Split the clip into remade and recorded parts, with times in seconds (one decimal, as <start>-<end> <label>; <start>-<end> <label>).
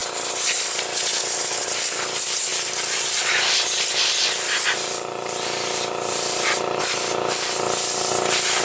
0.0-2.5 recorded; 2.5-6.8 remade; 6.8-8.6 recorded